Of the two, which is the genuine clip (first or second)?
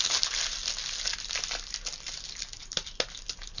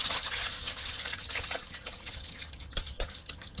first